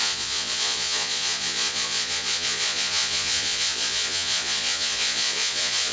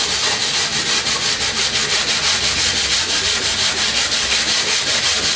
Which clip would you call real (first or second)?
second